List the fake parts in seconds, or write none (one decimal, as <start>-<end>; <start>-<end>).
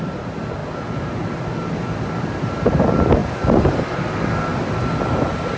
none